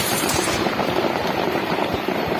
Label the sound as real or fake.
fake